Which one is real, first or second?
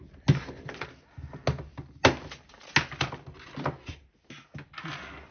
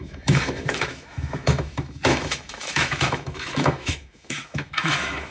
first